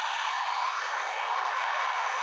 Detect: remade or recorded remade